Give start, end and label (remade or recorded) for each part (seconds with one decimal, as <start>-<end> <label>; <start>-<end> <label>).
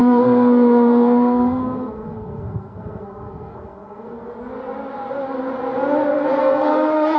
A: 0.0-4.3 remade; 4.3-6.4 recorded; 6.4-7.2 remade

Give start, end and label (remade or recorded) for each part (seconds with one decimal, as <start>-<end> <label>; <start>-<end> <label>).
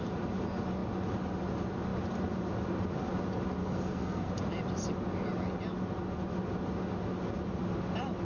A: 0.0-3.6 recorded; 3.6-4.3 remade; 4.3-8.2 recorded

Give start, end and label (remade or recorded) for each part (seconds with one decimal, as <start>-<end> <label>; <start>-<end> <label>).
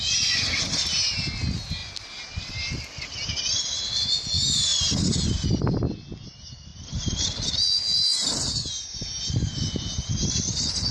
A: 0.0-10.9 recorded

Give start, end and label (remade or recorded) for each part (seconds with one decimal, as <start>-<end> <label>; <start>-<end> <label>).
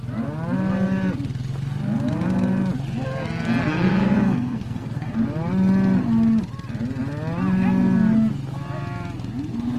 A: 0.0-3.6 recorded; 3.6-5.1 remade; 5.1-9.8 recorded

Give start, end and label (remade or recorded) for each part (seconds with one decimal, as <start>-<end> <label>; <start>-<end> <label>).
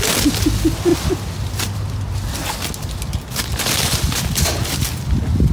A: 0.0-5.5 recorded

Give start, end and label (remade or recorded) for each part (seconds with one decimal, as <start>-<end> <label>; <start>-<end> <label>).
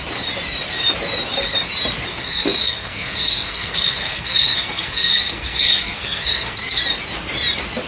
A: 0.0-2.1 recorded; 2.1-6.8 remade; 6.8-7.9 recorded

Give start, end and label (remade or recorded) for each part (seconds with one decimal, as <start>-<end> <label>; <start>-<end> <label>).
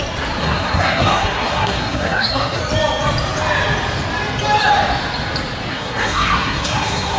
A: 0.0-0.4 recorded; 0.4-2.6 remade; 2.6-5.7 recorded; 5.7-7.2 remade